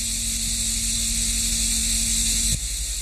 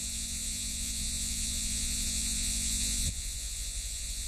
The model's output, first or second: second